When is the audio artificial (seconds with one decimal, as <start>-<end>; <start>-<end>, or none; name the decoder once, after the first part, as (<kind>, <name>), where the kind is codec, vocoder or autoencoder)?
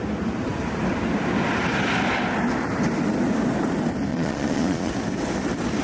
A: 4.1-4.9 (vocoder, Vocos)